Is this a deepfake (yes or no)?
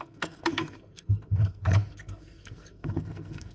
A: yes